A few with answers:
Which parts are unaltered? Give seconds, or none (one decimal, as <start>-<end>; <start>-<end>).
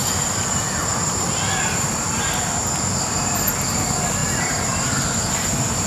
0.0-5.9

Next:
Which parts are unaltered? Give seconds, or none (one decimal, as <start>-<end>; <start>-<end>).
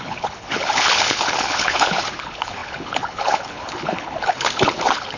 none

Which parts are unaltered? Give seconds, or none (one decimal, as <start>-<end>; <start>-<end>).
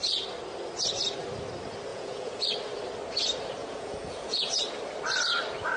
0.0-1.9; 2.4-3.6; 4.6-5.8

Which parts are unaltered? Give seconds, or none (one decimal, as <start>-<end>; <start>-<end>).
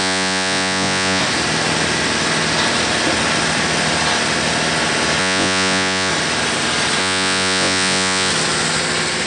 1.2-5.2; 6.1-7.0; 8.3-9.3